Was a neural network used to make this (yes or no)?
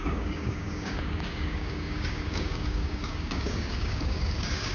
yes